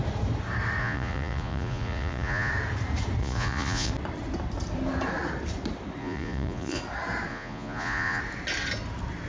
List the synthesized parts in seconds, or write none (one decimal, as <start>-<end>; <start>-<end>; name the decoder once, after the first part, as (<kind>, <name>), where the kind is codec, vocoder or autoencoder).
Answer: 0.8-2.5 (vocoder, Vocos); 3.2-3.9; 6.0-6.8; 7.3-8.2